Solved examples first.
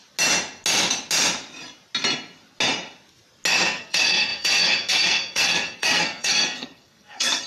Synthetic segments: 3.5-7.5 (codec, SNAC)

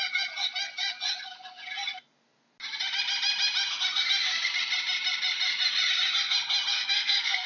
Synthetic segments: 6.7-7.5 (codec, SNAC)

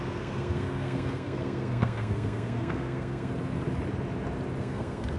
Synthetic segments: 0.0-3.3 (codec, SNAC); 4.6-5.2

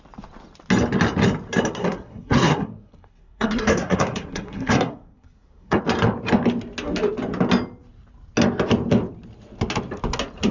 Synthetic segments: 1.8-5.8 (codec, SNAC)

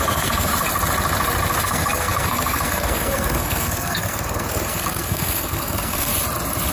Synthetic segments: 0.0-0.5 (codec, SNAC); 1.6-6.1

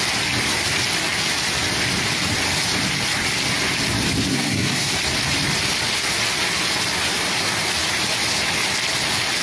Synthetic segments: 4.3-4.9 (codec, SNAC)

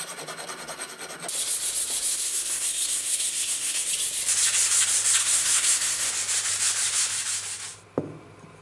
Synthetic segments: 2.1-3.8 (codec, SNAC); 5.2-6.1

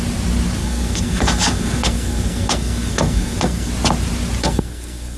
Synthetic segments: 0.6-3.7 (codec, SNAC); 4.4-5.2